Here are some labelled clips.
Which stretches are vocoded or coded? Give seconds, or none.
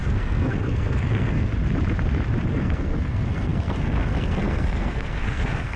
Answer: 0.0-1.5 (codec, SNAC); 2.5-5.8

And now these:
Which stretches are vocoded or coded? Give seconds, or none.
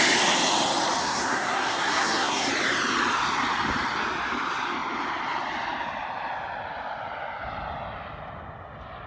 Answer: 1.0-2.5 (codec, SNAC)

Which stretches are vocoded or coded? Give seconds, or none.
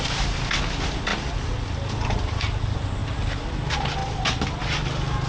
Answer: none